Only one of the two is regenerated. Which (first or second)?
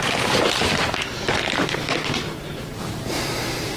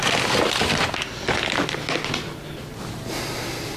first